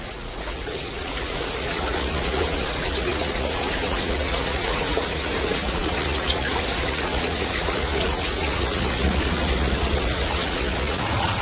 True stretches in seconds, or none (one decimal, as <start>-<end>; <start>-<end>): none